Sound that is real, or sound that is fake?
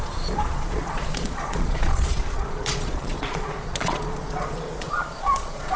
fake